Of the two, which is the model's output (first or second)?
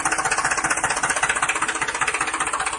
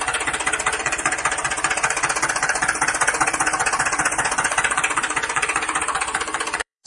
second